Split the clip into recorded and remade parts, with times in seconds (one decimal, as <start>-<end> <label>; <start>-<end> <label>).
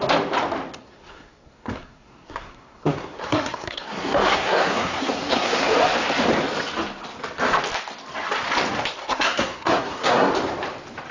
0.0-0.8 recorded; 0.8-5.7 remade; 5.7-9.0 recorded; 9.0-10.3 remade; 10.3-11.1 recorded